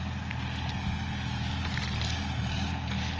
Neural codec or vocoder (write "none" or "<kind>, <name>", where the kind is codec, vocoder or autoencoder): none